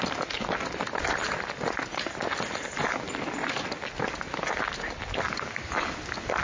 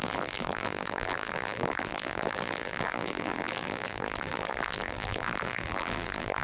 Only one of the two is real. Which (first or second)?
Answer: first